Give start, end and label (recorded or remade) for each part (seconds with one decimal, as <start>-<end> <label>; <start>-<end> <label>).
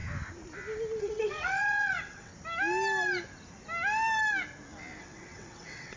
0.0-1.0 recorded; 1.0-2.3 remade; 2.3-5.0 recorded; 5.0-6.0 remade